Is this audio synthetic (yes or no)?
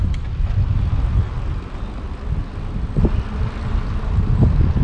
no